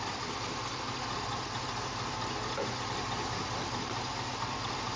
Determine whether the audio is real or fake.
real